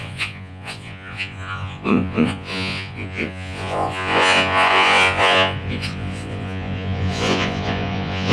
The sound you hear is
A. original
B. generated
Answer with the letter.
B